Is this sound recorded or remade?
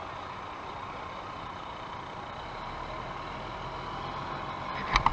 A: recorded